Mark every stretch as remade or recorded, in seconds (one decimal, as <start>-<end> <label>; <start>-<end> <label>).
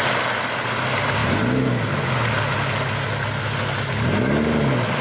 0.0-5.0 recorded